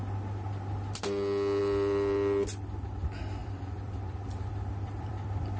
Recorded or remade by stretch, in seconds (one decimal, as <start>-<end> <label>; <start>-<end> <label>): 0.0-1.6 recorded; 1.6-3.0 remade; 3.0-3.4 recorded; 3.4-5.6 remade